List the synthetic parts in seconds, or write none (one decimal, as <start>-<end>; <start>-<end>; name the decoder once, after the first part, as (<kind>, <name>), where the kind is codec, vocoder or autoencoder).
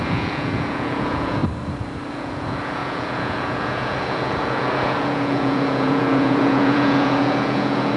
0.0-1.4 (vocoder, Vocos); 2.1-8.0